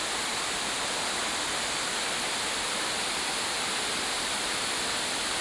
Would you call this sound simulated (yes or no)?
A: no